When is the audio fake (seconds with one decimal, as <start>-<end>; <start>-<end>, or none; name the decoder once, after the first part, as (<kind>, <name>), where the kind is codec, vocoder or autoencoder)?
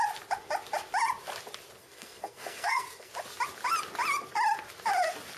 1.8-3.1 (codec, SNAC)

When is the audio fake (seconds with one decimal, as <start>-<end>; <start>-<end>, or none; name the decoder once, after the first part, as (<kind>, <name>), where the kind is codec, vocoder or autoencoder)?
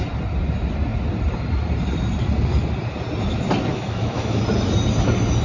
3.7-4.4 (autoencoder, DAC-VAE)